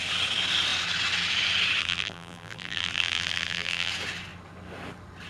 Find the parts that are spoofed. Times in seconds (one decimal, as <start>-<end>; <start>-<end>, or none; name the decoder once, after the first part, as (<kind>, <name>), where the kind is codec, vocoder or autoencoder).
1.8-3.9 (vocoder, BigVGAN v2)